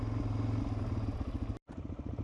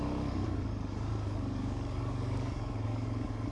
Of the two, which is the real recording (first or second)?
first